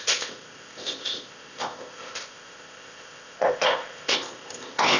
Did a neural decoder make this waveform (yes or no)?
yes